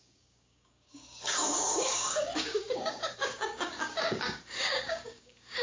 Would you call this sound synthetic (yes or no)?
yes